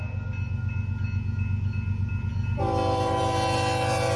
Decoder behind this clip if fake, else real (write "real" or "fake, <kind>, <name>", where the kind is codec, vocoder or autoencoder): real